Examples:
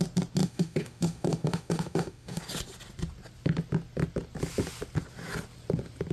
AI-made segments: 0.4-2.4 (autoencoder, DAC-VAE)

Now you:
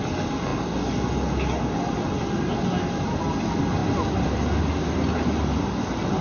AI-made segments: none